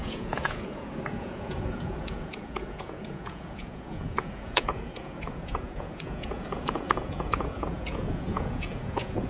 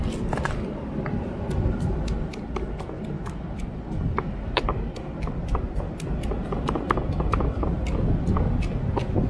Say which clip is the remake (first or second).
first